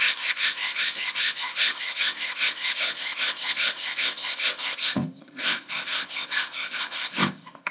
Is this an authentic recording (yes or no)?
no